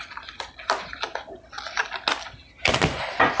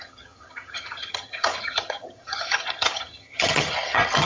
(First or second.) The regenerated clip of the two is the second